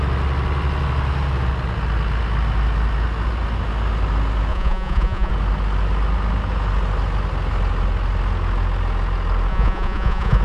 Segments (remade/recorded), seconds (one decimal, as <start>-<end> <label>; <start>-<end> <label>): 0.0-4.5 recorded; 4.5-5.3 remade; 5.3-9.5 recorded; 9.5-10.4 remade

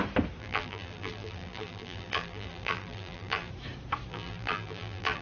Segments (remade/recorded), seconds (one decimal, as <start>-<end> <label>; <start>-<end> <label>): 0.0-0.4 recorded; 0.4-3.5 remade; 3.5-4.1 recorded; 4.1-5.2 remade

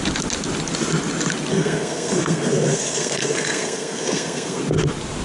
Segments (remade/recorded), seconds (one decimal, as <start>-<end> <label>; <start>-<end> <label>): 0.0-1.5 recorded; 1.5-4.6 remade; 4.6-5.2 recorded

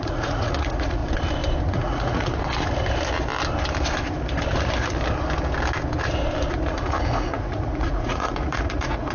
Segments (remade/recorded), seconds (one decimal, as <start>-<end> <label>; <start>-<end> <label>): 0.0-1.0 remade; 1.0-1.6 recorded; 1.6-2.3 remade; 2.3-6.5 recorded; 6.5-9.1 remade

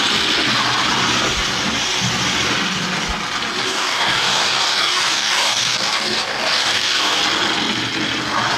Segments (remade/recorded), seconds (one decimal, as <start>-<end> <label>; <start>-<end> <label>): 0.0-3.6 recorded; 3.6-7.2 remade; 7.2-8.6 recorded

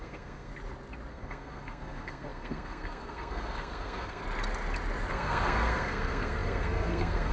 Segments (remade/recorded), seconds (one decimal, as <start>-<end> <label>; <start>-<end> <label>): 0.0-0.5 remade; 0.5-1.1 recorded; 1.1-4.2 remade; 4.2-5.1 recorded; 5.1-7.3 remade

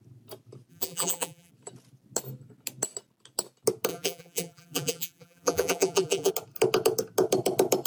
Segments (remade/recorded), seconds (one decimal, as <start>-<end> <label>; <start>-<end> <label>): 0.0-0.7 recorded; 0.7-1.5 remade; 1.5-3.9 recorded; 3.9-6.3 remade; 6.3-7.9 recorded